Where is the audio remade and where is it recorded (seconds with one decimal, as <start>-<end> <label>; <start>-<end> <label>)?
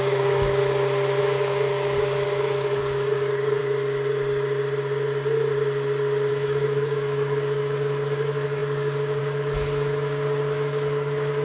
0.0-0.6 remade; 0.6-1.2 recorded; 1.2-3.6 remade; 3.6-6.3 recorded; 6.3-11.4 remade